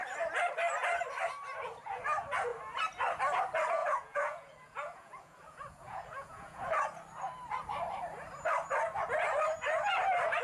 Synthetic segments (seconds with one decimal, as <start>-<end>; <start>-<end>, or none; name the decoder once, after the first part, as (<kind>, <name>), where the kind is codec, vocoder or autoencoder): 3.8-6.6 (vocoder, Vocos)